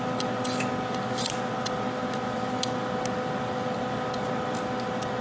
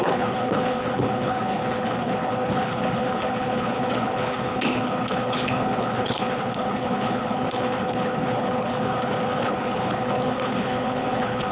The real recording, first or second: first